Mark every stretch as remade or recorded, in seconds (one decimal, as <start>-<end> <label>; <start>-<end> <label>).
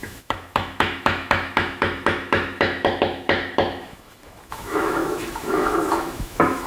0.0-6.7 remade